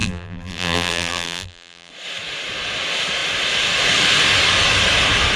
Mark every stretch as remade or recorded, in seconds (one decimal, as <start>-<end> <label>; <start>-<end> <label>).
0.0-1.9 remade; 1.9-5.4 recorded